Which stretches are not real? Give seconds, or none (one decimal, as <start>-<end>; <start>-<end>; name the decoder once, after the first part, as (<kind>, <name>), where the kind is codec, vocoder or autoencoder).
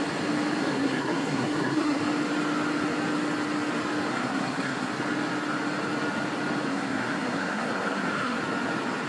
0.6-2.0 (codec, SNAC); 4.1-4.9; 6.7-8.4